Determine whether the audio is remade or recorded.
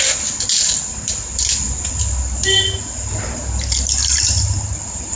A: recorded